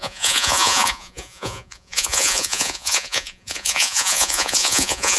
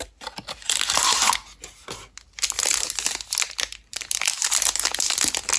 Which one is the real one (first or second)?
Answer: second